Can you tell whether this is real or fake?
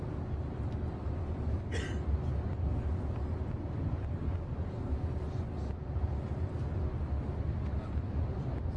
real